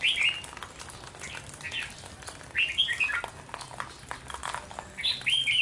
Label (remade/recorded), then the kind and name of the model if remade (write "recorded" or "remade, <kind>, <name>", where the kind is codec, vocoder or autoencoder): recorded